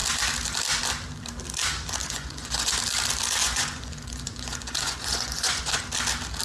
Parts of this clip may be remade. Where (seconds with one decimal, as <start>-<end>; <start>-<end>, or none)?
2.0-2.8; 3.4-5.8